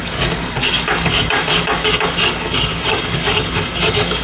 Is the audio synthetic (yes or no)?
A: yes